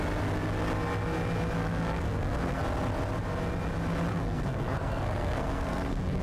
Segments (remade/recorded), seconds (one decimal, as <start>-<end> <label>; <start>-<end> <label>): 0.0-1.6 recorded; 1.6-2.6 remade; 2.6-4.1 recorded; 4.1-6.2 remade